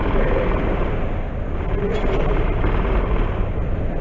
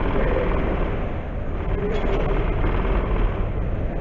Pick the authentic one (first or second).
second